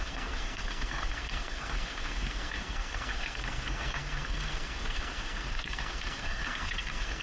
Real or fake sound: fake